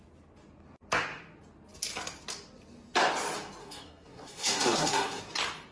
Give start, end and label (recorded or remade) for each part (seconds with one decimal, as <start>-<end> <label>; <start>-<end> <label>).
0.0-3.6 recorded; 3.6-5.2 remade; 5.2-5.7 recorded